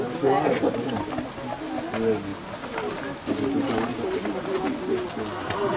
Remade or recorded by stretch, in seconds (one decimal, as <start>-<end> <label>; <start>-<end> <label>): 0.0-5.8 recorded